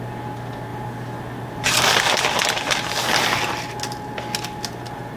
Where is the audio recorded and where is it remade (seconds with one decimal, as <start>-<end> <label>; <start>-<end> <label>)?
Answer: 0.0-5.2 recorded